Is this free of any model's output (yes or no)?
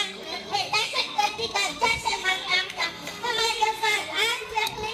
no